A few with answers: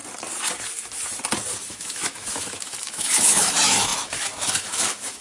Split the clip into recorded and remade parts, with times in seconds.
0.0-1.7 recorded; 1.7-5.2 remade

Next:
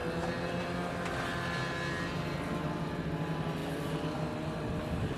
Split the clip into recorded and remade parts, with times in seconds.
0.0-5.2 recorded

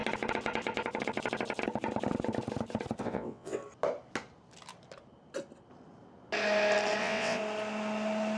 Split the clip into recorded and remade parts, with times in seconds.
0.0-3.0 recorded; 3.0-3.6 remade; 3.6-7.0 recorded; 7.0-7.4 remade; 7.4-8.4 recorded

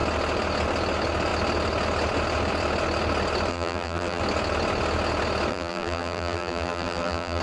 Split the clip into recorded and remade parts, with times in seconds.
0.0-3.5 recorded; 3.5-4.2 remade; 4.2-5.5 recorded; 5.5-7.4 remade

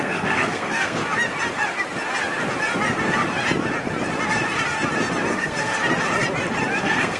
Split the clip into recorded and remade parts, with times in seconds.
0.0-1.0 remade; 1.0-5.3 recorded; 5.3-5.7 remade; 5.7-6.8 recorded; 6.8-7.2 remade